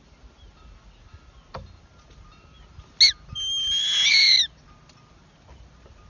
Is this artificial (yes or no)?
no